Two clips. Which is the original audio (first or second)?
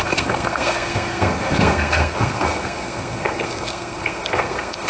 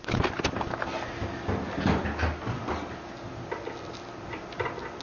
second